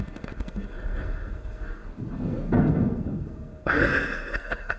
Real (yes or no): no